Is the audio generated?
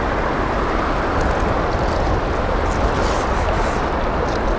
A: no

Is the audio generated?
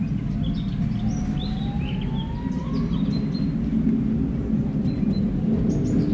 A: no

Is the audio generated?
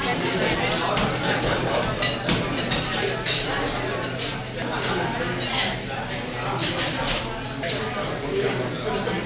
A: no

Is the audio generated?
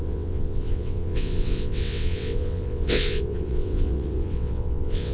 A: yes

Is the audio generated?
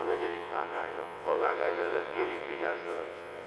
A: yes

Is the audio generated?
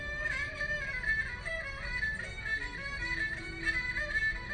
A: no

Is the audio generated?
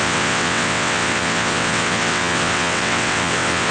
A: yes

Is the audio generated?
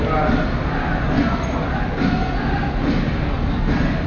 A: no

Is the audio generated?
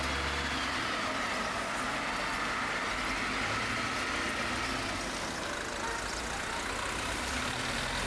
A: no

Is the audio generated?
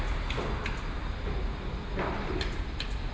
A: no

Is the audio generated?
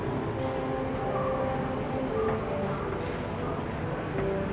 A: no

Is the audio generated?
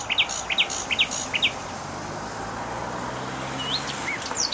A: no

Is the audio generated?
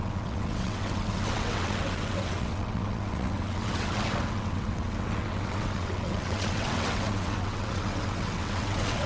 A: yes